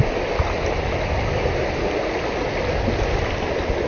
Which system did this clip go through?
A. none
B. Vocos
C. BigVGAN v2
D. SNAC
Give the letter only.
A